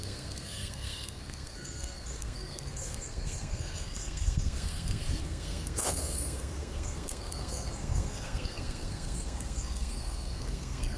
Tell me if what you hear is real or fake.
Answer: fake